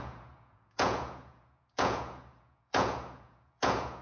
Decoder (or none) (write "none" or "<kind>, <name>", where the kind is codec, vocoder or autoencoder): vocoder, Vocos